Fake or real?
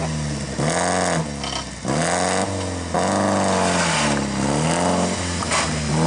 real